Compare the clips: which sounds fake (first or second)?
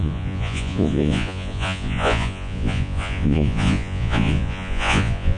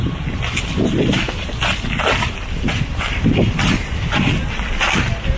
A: first